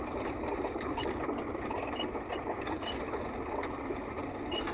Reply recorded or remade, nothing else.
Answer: recorded